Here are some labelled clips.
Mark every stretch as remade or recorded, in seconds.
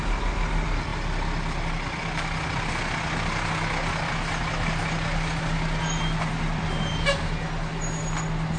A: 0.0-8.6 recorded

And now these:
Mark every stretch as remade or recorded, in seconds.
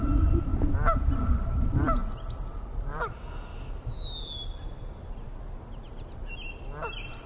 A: 0.0-7.3 recorded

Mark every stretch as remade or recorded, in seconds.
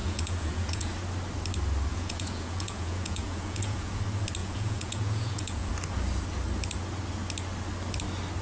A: 0.0-0.9 remade; 0.9-1.9 recorded; 1.9-4.0 remade; 4.0-4.4 recorded; 4.4-5.7 remade; 5.7-8.4 recorded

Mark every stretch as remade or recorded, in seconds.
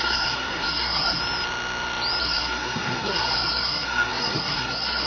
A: 0.0-1.2 remade; 1.2-2.2 recorded; 2.2-5.1 remade